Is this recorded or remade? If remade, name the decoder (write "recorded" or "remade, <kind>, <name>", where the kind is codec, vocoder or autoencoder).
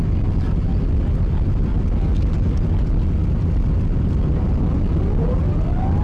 recorded